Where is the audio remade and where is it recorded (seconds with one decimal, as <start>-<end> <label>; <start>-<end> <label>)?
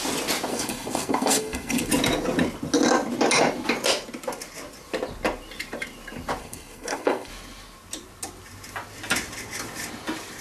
0.0-0.5 recorded; 0.5-1.9 remade; 1.9-6.4 recorded; 6.4-7.3 remade; 7.3-10.4 recorded